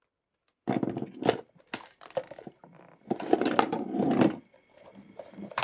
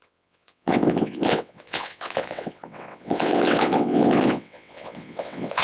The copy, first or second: second